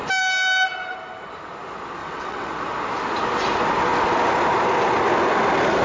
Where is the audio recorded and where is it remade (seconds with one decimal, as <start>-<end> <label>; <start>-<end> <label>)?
0.0-2.0 recorded; 2.0-2.5 remade; 2.5-5.8 recorded